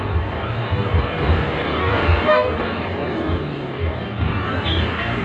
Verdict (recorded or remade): remade